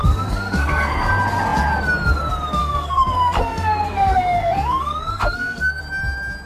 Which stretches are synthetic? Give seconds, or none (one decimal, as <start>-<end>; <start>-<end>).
0.0-1.1; 2.6-5.8